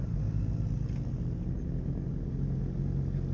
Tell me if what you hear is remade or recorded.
recorded